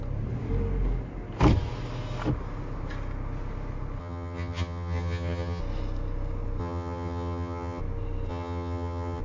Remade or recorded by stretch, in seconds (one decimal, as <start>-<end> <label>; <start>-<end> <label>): 0.0-4.0 recorded; 4.0-5.6 remade; 5.6-6.6 recorded; 6.6-7.8 remade; 7.8-8.3 recorded; 8.3-9.2 remade